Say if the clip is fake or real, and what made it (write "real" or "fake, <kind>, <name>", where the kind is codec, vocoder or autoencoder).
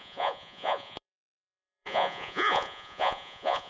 fake, vocoder, Vocos